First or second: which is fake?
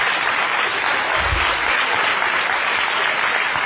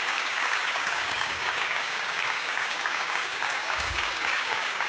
second